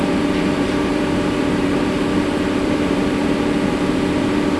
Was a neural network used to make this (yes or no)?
yes